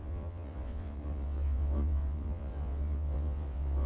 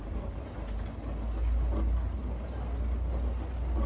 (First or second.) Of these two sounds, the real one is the second